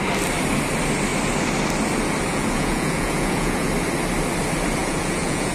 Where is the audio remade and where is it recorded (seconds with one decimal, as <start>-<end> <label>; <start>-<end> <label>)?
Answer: 0.0-2.3 recorded; 2.3-3.7 remade; 3.7-4.8 recorded; 4.8-5.5 remade